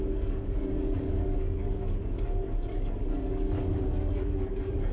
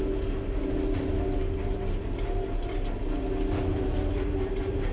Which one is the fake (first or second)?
first